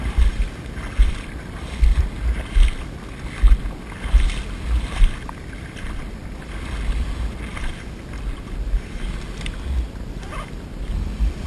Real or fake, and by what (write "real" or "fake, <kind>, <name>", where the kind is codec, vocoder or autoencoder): real